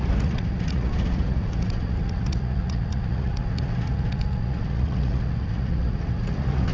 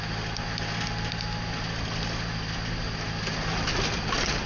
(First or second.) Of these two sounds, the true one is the second